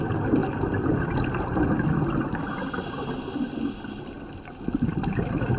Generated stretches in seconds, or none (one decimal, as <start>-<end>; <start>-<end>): none